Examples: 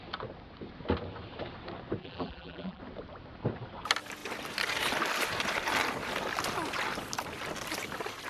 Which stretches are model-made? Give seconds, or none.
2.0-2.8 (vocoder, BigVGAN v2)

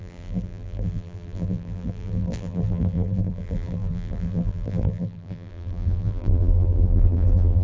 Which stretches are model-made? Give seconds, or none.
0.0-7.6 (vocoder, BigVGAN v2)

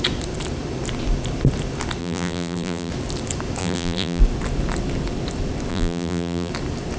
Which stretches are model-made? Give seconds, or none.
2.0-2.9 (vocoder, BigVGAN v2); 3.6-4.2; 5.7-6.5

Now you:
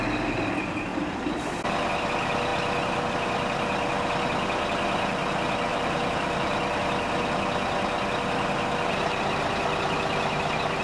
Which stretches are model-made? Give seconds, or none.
0.9-1.6 (vocoder, BigVGAN v2); 5.7-6.8

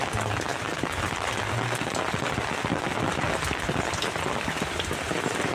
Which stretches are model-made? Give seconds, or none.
none

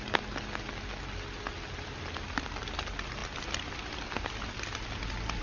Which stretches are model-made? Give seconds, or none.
none

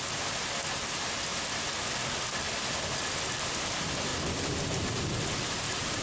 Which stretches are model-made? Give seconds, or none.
0.0-1.3 (vocoder, BigVGAN v2); 3.1-4.1; 4.8-6.0

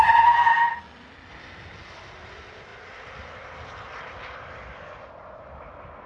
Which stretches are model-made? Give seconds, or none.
none